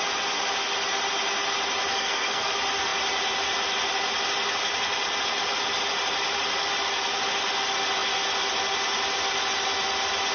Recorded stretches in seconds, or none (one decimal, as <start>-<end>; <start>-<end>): 0.0-1.9; 2.5-10.3